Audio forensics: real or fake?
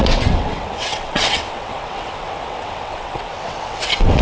fake